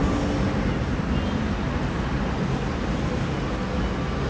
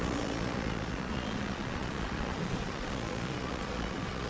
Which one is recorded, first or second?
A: first